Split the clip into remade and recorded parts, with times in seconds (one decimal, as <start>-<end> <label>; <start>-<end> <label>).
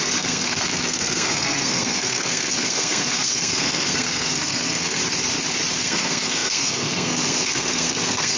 0.0-5.0 remade; 5.0-5.8 recorded; 5.8-8.4 remade